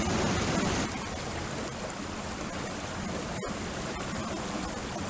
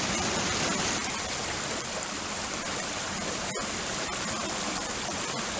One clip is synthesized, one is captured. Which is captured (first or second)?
first